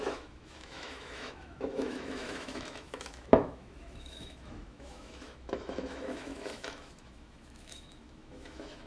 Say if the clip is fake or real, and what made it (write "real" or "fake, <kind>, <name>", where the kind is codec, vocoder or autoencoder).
fake, autoencoder, DAC-VAE